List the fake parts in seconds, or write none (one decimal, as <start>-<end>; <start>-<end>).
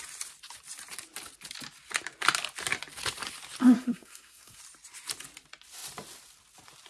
3.6-4.6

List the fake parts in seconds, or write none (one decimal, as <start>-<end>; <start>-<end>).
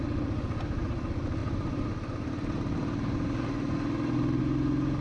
none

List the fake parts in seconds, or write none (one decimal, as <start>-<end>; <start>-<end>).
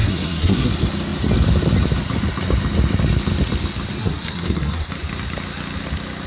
0.0-0.7; 4.0-4.9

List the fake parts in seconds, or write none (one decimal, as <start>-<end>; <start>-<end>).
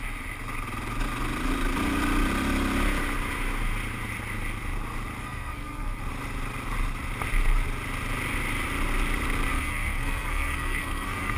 5.2-6.0; 9.5-11.4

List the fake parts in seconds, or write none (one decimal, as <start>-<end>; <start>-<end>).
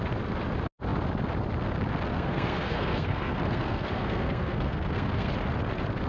2.1-5.3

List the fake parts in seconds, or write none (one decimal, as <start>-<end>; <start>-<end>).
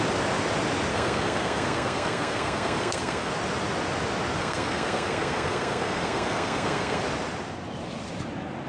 0.9-3.3; 4.4-7.0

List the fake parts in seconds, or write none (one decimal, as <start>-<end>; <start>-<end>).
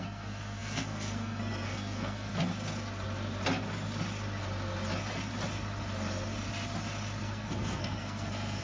0.0-2.3; 7.2-8.6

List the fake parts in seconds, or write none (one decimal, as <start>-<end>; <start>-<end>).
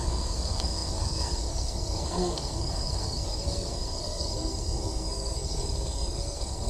0.0-6.7